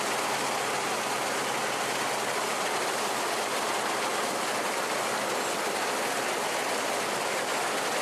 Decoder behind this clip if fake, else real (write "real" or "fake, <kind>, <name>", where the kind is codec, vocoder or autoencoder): real